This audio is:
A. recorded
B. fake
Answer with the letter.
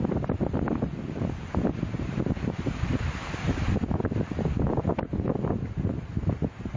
B